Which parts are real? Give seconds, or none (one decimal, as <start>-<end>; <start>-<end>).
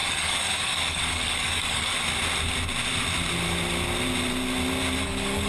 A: 1.9-5.0